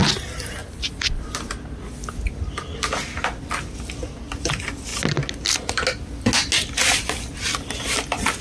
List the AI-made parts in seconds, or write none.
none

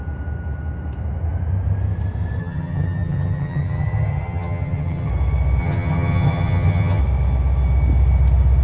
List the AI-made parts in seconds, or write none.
2.4-5.1 (vocoder, HiFi-GAN); 5.6-7.0

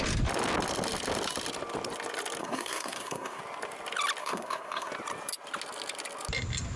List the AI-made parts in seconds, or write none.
2.4-3.4 (codec, SNAC); 4.2-4.9

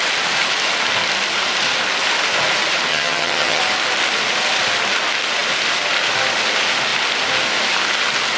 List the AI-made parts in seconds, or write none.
2.9-3.6 (vocoder, HiFi-GAN)

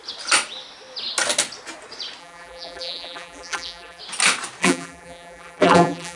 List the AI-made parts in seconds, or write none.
2.2-4.0 (vocoder, BigVGAN v2); 4.6-6.2